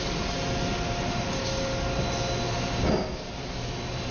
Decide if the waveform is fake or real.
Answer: real